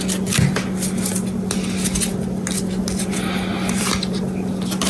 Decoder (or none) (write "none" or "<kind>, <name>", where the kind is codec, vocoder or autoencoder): none